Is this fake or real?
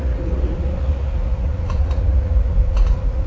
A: fake